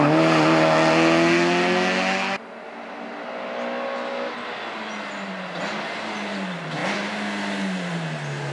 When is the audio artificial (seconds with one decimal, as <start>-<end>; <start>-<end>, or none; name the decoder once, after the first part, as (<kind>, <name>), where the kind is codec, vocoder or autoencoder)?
none

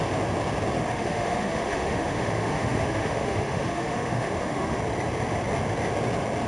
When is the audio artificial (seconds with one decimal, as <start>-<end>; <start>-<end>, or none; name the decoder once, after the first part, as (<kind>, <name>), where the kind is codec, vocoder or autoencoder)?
0.9-4.8 (autoencoder, DAC-VAE)

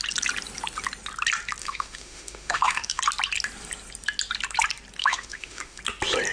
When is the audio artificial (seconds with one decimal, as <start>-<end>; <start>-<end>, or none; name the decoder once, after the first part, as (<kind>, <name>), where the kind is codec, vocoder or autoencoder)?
1.6-3.0 (autoencoder, DAC-VAE); 5.0-5.8

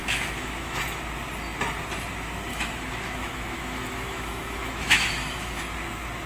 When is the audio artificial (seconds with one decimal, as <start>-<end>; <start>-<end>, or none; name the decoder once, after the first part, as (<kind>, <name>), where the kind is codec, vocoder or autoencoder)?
0.0-0.8 (autoencoder, DAC-VAE); 2.5-5.6

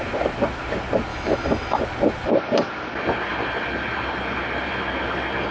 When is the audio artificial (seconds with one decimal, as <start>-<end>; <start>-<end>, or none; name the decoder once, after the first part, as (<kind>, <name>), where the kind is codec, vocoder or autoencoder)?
1.1-1.8 (autoencoder, DAC-VAE)

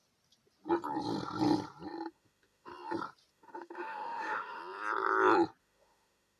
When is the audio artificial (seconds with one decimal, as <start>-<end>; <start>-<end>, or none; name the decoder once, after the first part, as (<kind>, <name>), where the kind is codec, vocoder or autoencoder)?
2.1-2.7 (autoencoder, DAC-VAE); 3.3-4.6; 5.6-6.4

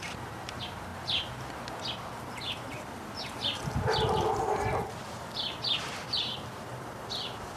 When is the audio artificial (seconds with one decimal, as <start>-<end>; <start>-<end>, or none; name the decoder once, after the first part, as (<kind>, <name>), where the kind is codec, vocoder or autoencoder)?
none